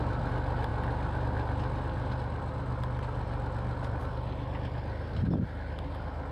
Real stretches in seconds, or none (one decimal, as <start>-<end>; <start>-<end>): 0.0-6.3